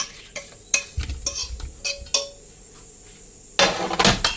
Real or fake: real